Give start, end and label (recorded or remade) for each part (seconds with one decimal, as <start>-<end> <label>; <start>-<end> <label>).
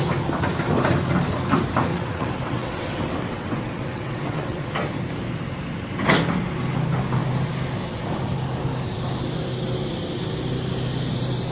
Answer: 0.0-1.9 recorded; 1.9-4.6 remade; 4.6-11.5 recorded